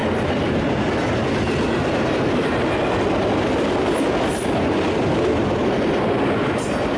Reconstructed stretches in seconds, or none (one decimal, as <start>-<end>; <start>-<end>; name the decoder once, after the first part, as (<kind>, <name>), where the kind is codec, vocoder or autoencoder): none

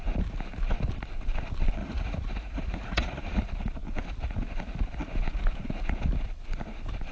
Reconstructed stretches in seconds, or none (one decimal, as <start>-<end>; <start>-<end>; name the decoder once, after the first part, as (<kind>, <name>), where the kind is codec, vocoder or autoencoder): 1.8-3.4 (vocoder, Vocos)

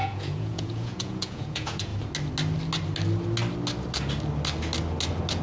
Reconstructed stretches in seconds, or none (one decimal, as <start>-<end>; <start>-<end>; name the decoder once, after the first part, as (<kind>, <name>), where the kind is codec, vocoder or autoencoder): 0.0-1.9 (vocoder, Vocos)

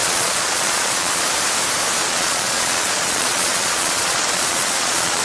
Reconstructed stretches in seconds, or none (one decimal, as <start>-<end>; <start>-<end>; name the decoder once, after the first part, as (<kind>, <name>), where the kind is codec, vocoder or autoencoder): 0.0-1.3 (vocoder, Vocos); 2.0-5.2

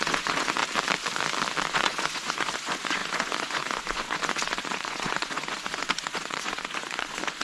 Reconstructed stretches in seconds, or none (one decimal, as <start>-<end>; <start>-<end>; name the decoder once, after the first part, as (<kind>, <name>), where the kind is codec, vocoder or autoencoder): 0.0-0.6 (vocoder, Vocos); 1.7-7.4